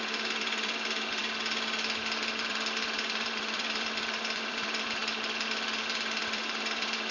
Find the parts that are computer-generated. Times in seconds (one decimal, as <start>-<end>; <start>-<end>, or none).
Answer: 0.0-1.2; 2.5-5.0; 6.2-7.1